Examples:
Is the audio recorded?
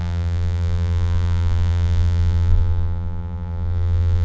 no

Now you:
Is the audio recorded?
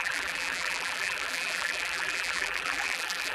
no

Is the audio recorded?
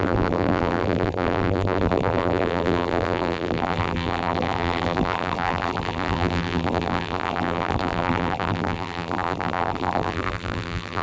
no